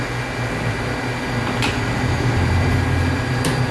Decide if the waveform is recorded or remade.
recorded